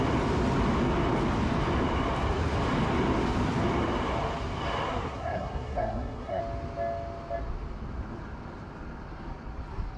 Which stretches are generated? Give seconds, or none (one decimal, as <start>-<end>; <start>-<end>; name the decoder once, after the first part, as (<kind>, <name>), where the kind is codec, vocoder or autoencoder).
4.9-6.4 (codec, SNAC)